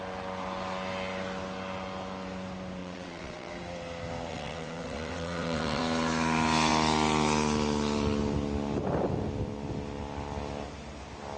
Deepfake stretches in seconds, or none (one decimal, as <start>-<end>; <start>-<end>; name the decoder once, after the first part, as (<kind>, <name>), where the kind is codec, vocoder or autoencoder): 2.8-3.5 (vocoder, WaveNeXt); 4.3-5.8